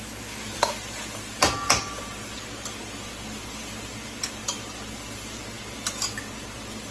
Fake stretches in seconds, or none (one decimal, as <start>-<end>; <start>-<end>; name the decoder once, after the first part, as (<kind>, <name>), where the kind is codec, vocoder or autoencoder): none